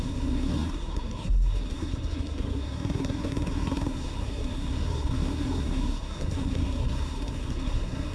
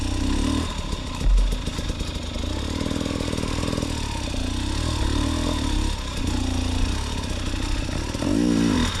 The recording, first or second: second